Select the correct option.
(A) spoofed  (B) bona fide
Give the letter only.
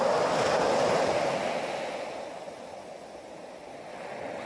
B